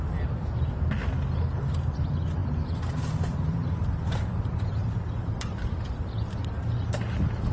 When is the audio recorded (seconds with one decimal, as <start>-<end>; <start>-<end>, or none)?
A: 0.0-2.4; 6.9-7.5